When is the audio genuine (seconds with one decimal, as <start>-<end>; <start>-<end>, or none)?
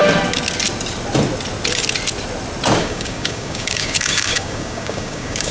0.0-2.8